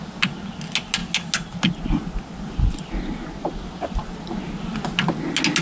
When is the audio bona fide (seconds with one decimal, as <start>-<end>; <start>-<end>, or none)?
0.0-5.6